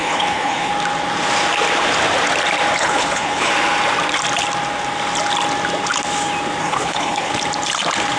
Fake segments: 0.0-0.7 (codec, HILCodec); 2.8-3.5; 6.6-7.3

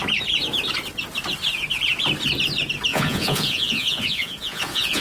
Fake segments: 2.9-5.0 (vocoder, Vocos)

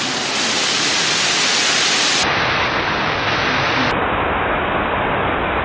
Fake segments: none